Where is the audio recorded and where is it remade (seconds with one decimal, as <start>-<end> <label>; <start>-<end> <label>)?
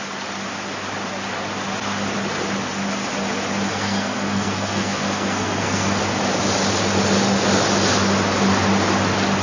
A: 0.0-3.7 recorded; 3.7-6.0 remade; 6.0-9.4 recorded